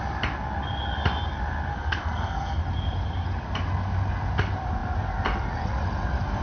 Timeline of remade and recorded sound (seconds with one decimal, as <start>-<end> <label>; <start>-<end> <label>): 0.0-1.7 recorded; 1.7-2.6 remade; 2.6-6.4 recorded